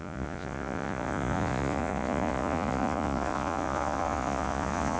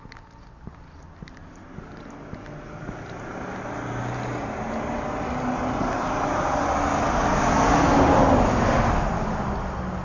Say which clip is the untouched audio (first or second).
second